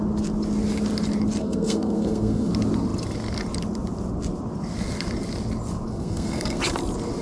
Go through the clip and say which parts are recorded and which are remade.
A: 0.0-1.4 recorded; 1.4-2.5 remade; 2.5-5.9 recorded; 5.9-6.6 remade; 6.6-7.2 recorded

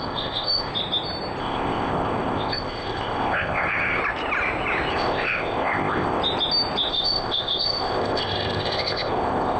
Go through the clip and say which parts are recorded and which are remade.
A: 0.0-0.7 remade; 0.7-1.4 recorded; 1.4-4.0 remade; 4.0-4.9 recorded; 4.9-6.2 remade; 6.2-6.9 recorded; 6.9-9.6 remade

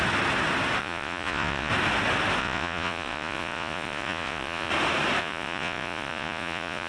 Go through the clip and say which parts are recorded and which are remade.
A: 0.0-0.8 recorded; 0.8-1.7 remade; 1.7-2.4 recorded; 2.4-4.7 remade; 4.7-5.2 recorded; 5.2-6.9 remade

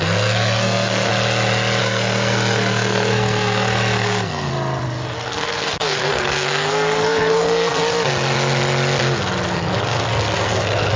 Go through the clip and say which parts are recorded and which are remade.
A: 0.0-1.1 remade; 1.1-1.8 recorded; 1.8-4.5 remade; 4.5-5.2 recorded; 5.2-7.8 remade; 7.8-9.5 recorded; 9.5-11.0 remade